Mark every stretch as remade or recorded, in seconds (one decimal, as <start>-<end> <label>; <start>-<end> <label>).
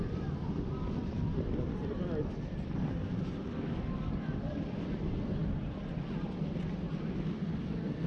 0.0-5.4 remade; 5.4-7.4 recorded; 7.4-8.1 remade